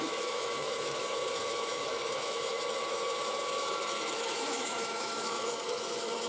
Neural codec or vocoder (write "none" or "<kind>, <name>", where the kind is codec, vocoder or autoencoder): autoencoder, DAC-VAE